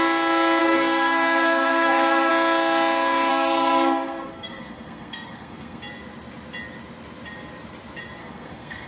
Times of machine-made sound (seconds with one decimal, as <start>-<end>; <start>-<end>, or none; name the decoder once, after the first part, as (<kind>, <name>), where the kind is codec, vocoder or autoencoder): 0.6-2.3 (codec, SNAC); 3.3-5.8; 8.2-8.9